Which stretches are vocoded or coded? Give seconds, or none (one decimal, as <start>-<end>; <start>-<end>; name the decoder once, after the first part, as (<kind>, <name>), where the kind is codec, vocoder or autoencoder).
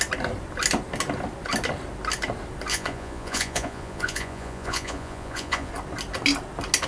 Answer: 2.7-5.7 (vocoder, Vocos)